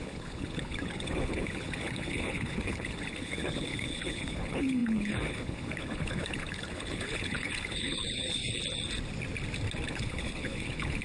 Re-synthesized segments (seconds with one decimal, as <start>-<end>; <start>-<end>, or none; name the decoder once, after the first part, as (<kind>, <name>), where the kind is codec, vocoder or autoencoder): 0.0-8.6 (codec, HILCodec); 9.9-11.0